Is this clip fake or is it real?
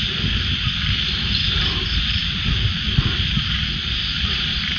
fake